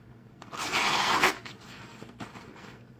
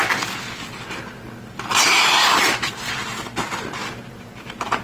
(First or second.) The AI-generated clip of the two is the first